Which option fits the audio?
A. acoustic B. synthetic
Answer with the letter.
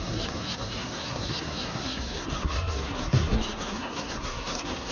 B